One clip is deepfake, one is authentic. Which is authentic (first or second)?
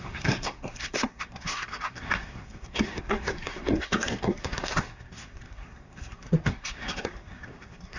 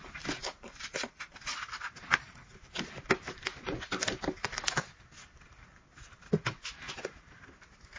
second